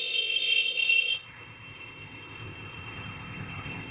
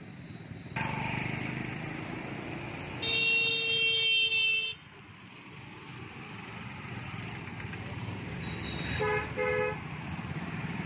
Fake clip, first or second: first